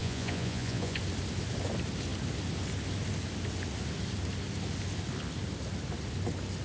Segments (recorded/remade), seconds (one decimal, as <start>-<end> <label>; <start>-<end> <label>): 0.0-1.0 remade; 1.0-6.6 recorded